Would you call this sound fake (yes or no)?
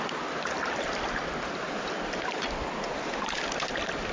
no